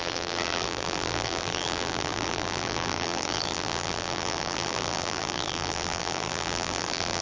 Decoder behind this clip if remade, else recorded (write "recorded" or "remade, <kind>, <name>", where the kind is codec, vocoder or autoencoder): remade, vocoder, BigVGAN v2